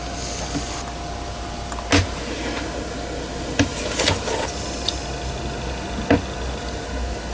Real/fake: real